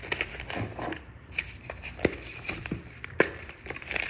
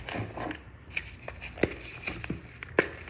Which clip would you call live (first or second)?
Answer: second